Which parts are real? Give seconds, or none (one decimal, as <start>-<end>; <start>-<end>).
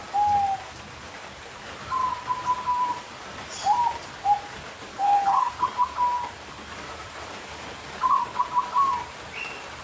0.0-4.9; 5.5-9.8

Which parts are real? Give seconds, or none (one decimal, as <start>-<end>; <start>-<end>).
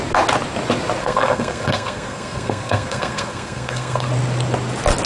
0.0-1.0; 4.1-5.1